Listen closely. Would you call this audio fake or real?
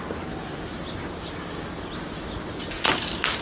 real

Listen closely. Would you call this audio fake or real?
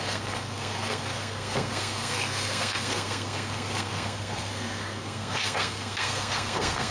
fake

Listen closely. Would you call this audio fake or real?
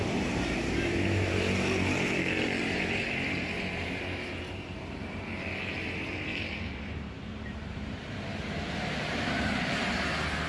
fake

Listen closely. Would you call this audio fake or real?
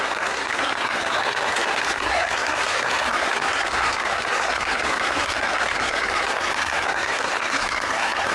fake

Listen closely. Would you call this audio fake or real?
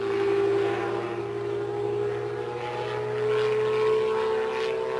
real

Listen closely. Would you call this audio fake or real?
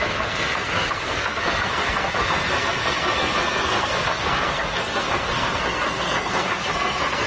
fake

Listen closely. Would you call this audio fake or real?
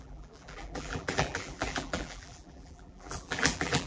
fake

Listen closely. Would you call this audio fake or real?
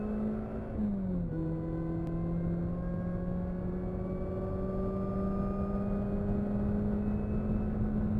real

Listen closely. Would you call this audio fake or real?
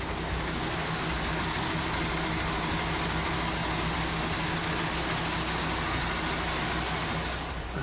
real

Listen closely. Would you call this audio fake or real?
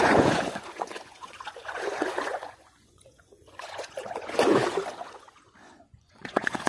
fake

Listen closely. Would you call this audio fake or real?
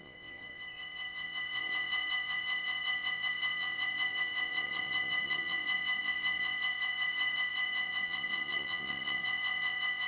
fake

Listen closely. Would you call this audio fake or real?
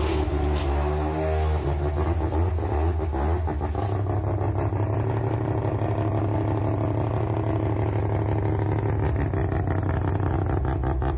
real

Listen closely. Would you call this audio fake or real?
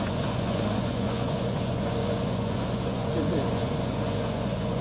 fake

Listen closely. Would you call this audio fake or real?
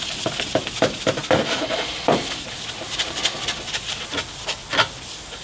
real